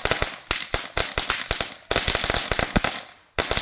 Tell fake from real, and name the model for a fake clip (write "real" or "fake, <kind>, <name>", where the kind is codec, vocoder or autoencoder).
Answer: real